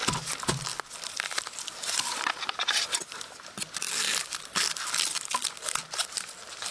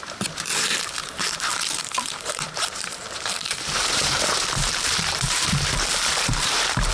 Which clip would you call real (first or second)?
first